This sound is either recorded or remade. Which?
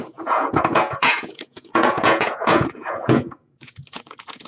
remade